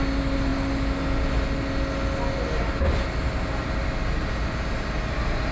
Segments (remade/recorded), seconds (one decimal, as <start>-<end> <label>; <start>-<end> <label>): 0.0-5.5 recorded